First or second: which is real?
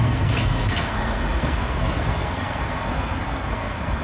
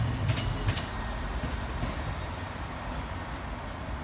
second